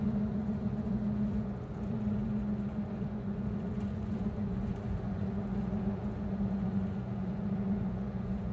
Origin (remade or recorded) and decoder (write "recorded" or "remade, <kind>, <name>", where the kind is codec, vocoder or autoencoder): remade, vocoder, Vocos